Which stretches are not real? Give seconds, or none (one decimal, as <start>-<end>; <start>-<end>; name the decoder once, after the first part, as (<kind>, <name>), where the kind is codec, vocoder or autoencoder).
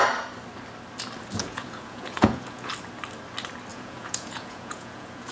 1.4-2.7 (vocoder, Vocos); 3.7-5.3